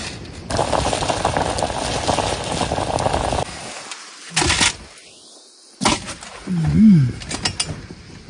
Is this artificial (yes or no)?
no